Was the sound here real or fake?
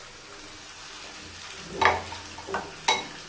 real